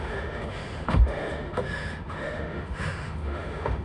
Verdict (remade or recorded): remade